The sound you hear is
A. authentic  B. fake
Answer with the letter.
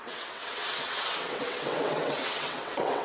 B